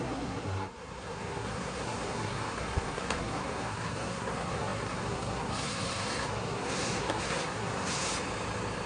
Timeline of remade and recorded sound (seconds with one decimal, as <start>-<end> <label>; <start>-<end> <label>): 0.0-8.1 remade; 8.1-8.9 recorded